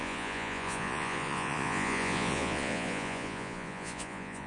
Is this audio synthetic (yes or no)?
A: yes